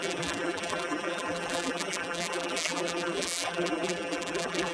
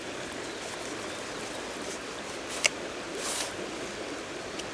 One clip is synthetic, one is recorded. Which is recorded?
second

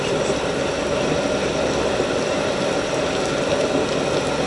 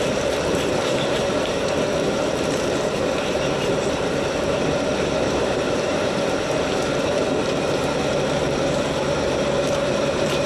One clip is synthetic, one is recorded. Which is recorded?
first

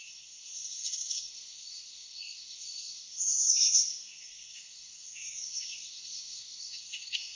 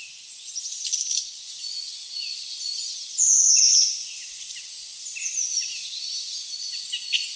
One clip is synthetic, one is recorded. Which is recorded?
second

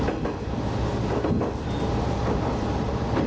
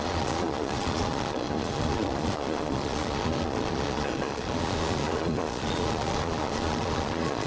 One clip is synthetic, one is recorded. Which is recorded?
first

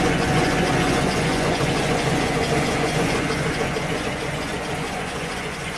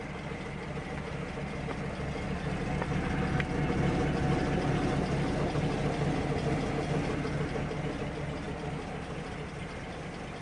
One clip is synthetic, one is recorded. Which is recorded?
second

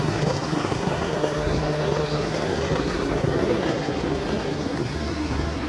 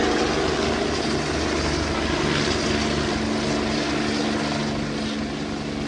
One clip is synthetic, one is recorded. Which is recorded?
second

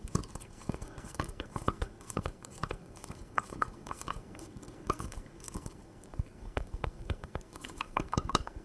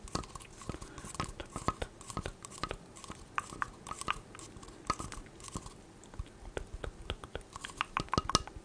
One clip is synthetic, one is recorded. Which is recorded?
second